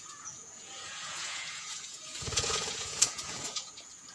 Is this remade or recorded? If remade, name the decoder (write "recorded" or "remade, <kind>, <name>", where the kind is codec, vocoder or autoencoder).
remade, vocoder, Vocos